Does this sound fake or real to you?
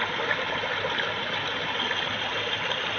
real